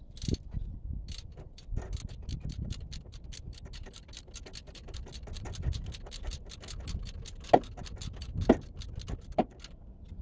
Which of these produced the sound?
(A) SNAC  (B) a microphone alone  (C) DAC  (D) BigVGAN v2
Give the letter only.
B